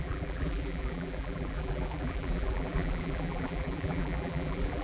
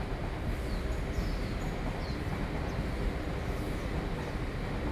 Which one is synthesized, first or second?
first